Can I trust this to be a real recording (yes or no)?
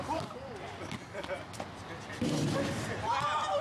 yes